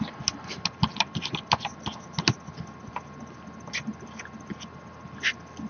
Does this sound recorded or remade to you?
recorded